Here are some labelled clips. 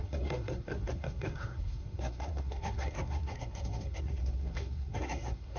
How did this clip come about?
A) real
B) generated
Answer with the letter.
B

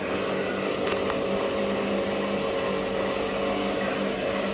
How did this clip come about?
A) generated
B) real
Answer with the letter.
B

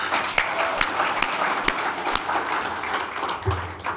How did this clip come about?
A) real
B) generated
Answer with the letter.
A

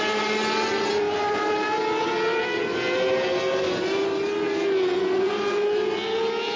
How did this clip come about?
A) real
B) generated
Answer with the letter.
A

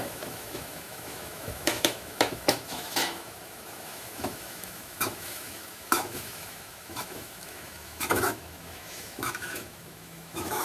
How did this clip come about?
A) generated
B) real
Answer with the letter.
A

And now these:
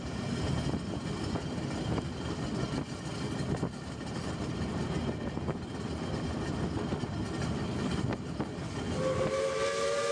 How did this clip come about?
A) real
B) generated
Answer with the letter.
A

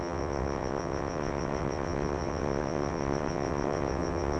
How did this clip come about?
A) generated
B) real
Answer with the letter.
A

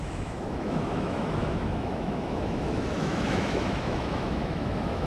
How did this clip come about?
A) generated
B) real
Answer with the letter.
A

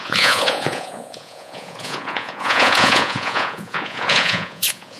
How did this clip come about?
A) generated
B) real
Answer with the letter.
A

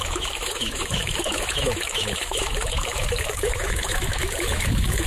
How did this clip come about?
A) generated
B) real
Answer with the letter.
A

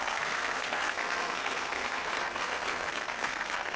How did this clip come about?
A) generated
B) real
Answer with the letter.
A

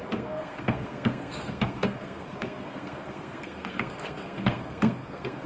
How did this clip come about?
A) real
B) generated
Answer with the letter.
B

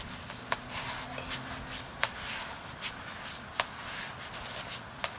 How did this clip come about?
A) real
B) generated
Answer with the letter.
A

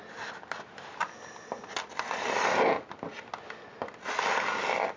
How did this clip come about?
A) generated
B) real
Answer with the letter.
B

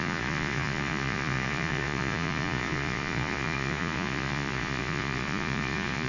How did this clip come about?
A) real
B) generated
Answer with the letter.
B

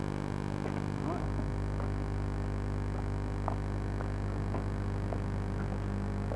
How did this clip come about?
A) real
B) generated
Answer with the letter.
A